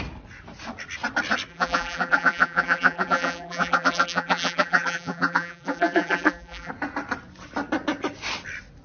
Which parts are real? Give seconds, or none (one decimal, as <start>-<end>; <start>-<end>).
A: 0.0-1.5; 6.7-8.8